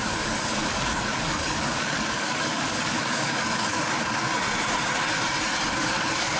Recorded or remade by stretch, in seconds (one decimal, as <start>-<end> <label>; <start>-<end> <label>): 0.0-4.3 remade; 4.3-5.7 recorded; 5.7-6.4 remade